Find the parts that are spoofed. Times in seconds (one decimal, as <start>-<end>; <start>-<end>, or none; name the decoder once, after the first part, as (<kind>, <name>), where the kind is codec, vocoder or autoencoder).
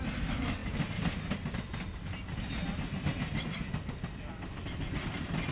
none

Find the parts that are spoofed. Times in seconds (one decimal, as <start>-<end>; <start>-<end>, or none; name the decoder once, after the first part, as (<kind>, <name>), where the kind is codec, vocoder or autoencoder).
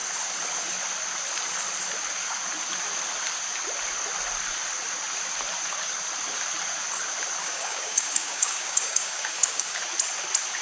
7.4-9.8 (codec, DAC)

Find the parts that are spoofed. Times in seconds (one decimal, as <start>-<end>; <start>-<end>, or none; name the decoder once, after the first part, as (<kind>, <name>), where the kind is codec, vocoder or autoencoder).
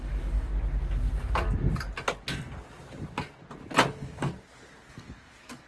0.0-0.5 (codec, DAC); 3.9-4.3; 4.9-5.7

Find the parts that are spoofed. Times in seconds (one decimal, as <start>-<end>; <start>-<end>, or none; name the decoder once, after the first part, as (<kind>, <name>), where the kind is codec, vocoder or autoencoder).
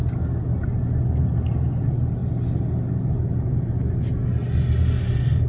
none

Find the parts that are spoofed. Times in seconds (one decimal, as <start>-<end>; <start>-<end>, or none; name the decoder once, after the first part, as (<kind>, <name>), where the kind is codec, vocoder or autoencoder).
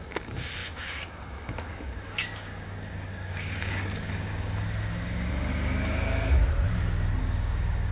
0.0-6.4 (codec, DAC); 7.2-7.9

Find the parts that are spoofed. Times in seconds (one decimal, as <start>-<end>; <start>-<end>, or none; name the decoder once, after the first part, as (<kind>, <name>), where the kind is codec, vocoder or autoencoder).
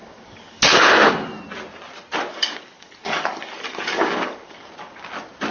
0.0-1.1 (codec, DAC); 2.3-4.7